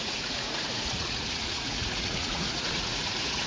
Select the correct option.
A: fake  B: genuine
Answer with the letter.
A